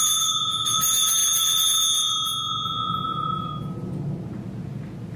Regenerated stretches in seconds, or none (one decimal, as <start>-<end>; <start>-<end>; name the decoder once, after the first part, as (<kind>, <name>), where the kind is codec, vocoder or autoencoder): none